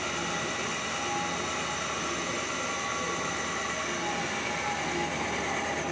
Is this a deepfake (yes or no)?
no